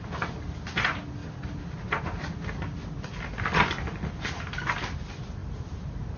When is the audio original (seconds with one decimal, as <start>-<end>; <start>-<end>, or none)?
0.0-6.2